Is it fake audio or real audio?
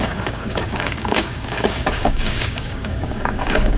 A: fake